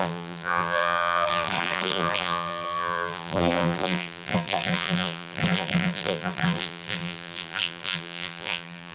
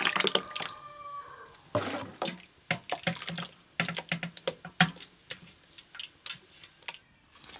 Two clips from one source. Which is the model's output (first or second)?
first